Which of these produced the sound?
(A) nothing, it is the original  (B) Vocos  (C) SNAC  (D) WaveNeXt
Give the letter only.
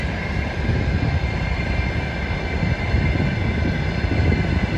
A